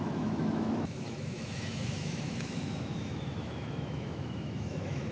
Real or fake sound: fake